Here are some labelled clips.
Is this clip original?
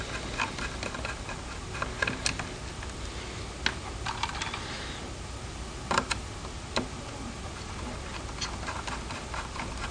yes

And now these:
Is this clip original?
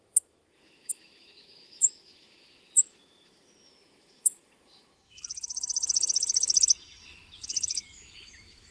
no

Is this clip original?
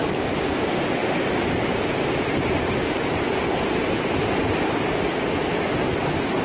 yes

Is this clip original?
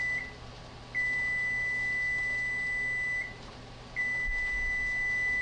yes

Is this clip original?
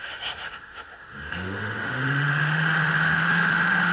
no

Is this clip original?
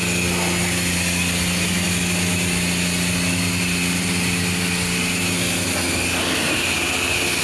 yes